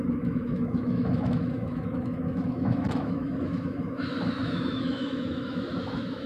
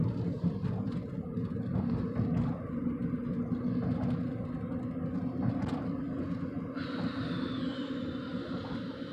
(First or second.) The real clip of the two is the second